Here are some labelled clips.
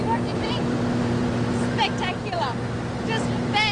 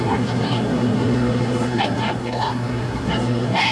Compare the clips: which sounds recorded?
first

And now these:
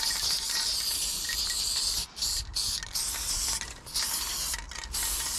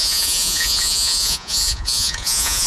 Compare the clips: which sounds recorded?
first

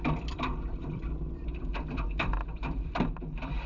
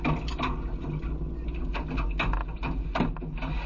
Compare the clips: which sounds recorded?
second